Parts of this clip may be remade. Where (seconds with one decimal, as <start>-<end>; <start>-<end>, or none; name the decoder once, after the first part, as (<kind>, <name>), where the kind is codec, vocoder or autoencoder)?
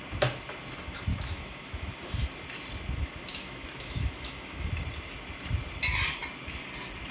1.1-1.9 (autoencoder, DAC-VAE); 3.3-4.7